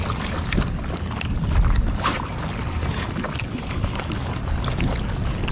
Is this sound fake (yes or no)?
no